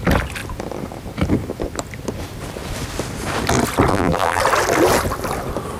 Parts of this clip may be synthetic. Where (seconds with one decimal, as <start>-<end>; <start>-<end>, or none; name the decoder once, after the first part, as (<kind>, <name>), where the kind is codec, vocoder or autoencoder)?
3.9-4.4 (vocoder, BigVGAN v2)